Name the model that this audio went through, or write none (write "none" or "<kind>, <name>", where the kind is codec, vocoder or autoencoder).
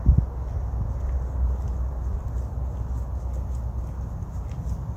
none